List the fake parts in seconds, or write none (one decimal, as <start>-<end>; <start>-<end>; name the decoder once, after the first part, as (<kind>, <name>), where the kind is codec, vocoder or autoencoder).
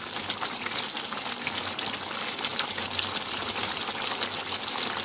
2.5-3.8 (vocoder, BigVGAN v2)